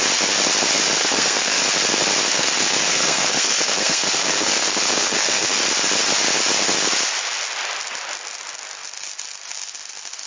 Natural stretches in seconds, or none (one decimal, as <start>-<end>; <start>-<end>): 0.0-1.0; 1.6-2.3; 5.6-10.3